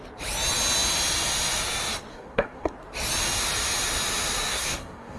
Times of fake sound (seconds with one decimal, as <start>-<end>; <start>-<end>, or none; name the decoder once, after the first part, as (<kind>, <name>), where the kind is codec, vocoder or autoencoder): 2.1-2.7 (codec, SNAC); 4.5-5.2